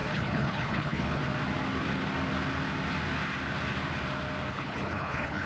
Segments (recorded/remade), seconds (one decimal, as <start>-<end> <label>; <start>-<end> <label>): 0.0-1.2 remade; 1.2-4.5 recorded; 4.5-5.5 remade

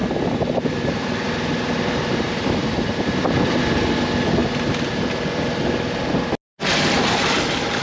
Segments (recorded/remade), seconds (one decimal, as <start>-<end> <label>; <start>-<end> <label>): 0.0-3.6 remade; 3.6-4.4 recorded; 4.4-6.1 remade; 6.1-7.8 recorded

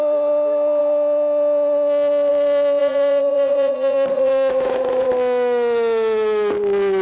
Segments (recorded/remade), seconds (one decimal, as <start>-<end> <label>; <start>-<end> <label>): 0.0-2.8 recorded; 2.8-5.1 remade; 5.1-7.0 recorded

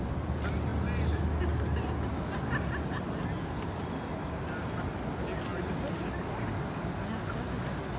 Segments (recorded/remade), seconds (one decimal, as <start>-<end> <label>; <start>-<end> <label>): 0.0-8.0 recorded